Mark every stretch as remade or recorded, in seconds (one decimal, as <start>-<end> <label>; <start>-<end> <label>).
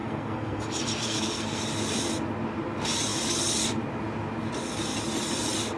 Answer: 0.0-0.6 remade; 0.6-1.0 recorded; 1.0-1.6 remade; 1.6-5.8 recorded